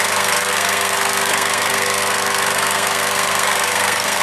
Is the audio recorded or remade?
remade